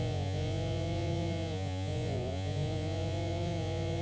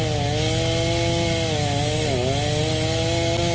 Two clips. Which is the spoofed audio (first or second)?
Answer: first